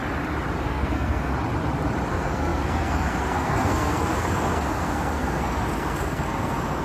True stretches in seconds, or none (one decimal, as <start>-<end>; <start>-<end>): 0.0-0.6; 1.3-2.1